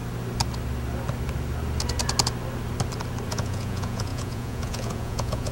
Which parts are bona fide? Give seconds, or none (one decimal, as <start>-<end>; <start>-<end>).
0.0-3.3